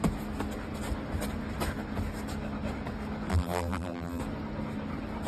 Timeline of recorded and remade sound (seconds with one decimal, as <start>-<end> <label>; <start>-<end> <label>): 0.0-3.3 recorded; 3.3-4.2 remade; 4.2-5.3 recorded